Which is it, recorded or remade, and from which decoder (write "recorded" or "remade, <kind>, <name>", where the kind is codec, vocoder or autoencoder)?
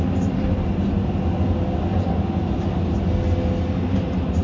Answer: recorded